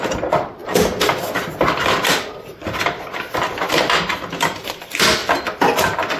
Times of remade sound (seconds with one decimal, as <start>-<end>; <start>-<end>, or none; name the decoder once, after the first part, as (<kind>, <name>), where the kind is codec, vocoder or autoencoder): none